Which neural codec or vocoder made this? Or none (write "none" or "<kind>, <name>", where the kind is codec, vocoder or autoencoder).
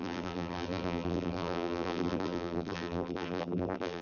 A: vocoder, BigVGAN v2